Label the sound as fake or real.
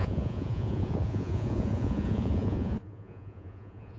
fake